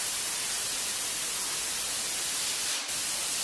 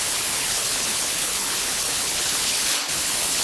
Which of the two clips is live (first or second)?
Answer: first